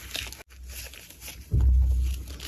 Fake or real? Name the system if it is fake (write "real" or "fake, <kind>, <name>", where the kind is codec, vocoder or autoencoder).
real